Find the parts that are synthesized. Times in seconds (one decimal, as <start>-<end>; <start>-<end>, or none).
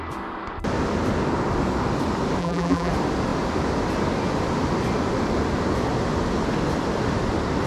2.4-2.9